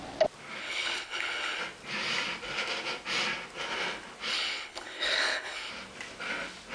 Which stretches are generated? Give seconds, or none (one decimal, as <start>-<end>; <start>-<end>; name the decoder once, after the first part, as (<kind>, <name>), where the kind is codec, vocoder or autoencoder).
0.6-1.6 (codec, HILCodec); 4.3-5.7